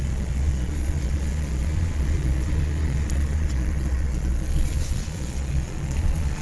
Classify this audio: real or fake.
fake